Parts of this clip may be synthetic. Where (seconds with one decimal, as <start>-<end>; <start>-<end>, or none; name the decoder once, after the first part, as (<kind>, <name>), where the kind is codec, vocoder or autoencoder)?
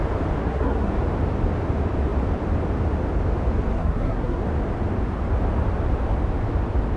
0.4-0.9 (codec, SNAC); 3.7-4.4